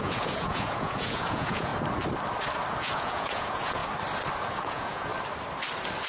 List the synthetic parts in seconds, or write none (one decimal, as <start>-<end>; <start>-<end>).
0.0-1.7; 2.8-3.8; 4.5-5.1